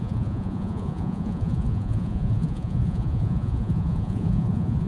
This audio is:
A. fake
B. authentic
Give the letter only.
A